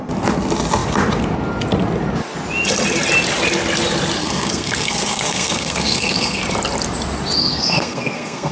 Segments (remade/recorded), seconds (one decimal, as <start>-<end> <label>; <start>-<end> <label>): 0.0-4.2 recorded; 4.2-6.4 remade; 6.4-7.4 recorded; 7.4-8.5 remade